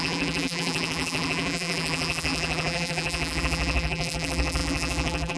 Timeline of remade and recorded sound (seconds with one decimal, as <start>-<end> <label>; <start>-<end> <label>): 0.0-5.4 remade